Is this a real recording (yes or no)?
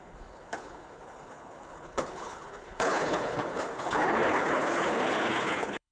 no